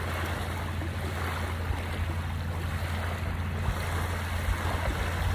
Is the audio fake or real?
real